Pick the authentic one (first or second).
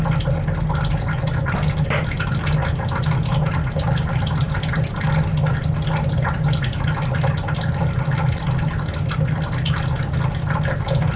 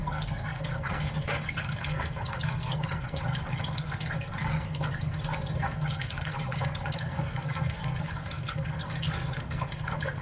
first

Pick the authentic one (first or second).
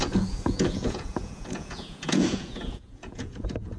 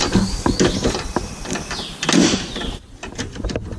second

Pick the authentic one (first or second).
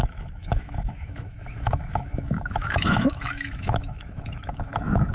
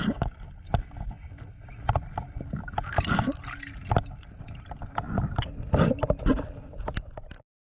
second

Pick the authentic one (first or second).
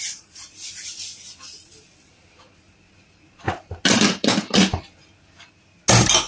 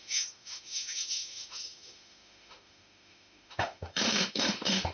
first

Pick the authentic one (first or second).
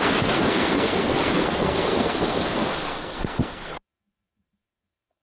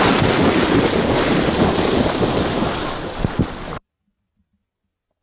second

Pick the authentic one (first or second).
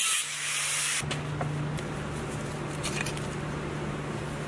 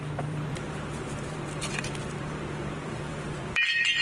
first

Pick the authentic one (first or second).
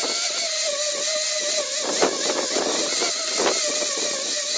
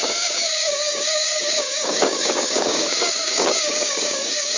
first